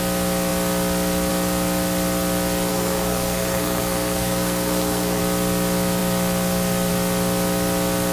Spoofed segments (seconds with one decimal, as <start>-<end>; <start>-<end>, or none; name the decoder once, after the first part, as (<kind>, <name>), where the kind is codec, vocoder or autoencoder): 2.7-5.2 (codec, SNAC)